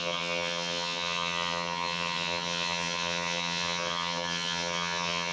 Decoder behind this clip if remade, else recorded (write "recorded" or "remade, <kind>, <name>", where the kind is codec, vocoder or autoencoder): remade, vocoder, HiFi-GAN